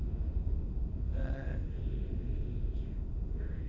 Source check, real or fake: fake